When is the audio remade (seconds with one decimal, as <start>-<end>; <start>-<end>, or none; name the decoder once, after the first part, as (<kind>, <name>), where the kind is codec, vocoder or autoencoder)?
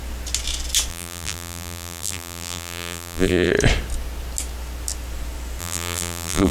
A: 0.9-3.5 (vocoder, BigVGAN v2); 5.6-6.5